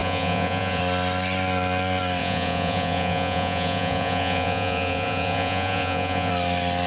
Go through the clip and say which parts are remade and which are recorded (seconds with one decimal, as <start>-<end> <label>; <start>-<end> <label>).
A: 0.0-0.8 remade; 0.8-2.2 recorded; 2.2-6.3 remade; 6.3-6.9 recorded